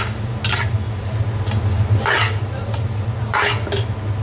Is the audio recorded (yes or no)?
yes